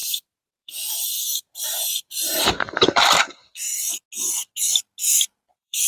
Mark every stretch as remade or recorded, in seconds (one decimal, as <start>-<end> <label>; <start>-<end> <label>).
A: 0.0-3.7 remade; 3.7-5.5 recorded; 5.5-5.9 remade